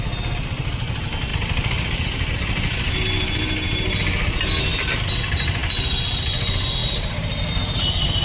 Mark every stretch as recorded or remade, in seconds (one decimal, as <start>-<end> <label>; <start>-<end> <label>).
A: 0.0-8.2 recorded